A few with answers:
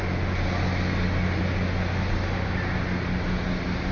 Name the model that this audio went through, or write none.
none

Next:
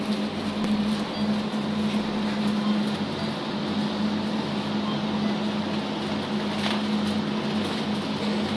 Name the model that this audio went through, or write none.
none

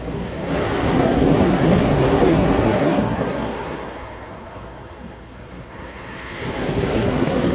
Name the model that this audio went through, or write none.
codec, SNAC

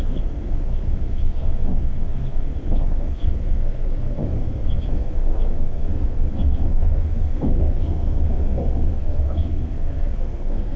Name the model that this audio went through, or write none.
codec, SNAC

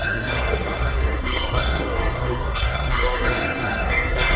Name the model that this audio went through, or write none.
codec, SNAC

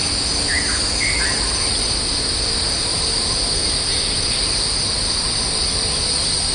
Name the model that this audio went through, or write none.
none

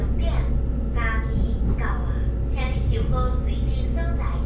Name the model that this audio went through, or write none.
none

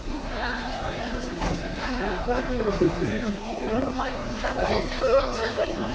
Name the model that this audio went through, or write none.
codec, SNAC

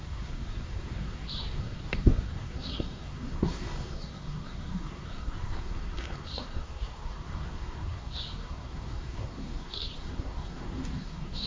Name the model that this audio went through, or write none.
codec, SNAC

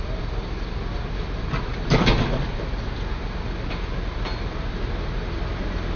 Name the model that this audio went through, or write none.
none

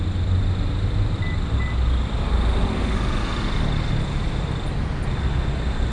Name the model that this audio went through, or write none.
none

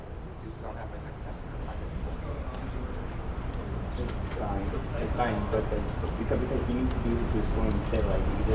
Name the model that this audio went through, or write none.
none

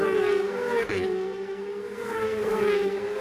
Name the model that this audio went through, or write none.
codec, SNAC